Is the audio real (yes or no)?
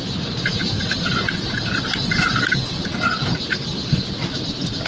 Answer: yes